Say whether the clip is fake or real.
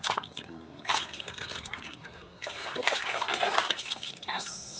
fake